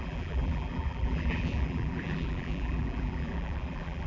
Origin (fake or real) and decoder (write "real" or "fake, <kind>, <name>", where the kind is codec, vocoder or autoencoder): fake, vocoder, BigVGAN v2